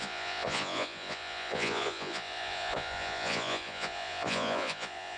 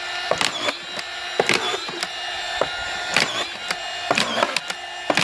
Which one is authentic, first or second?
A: second